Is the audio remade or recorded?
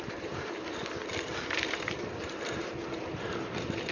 remade